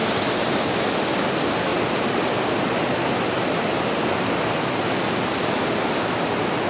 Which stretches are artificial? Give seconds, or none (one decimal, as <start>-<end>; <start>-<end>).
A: none